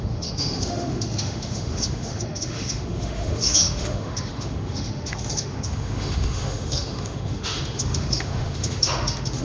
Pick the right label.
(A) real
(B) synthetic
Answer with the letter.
B